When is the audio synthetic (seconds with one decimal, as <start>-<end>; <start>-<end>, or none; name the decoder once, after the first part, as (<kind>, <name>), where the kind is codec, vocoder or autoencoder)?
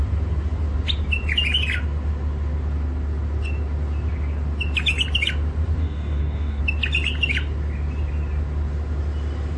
5.8-6.6 (codec, DAC)